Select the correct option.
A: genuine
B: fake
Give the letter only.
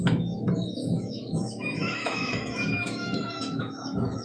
B